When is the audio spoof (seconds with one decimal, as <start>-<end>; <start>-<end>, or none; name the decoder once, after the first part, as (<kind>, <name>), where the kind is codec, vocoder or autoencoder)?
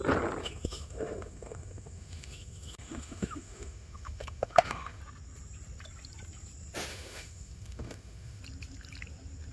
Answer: 0.4-5.0 (autoencoder, DAC-VAE); 6.9-8.4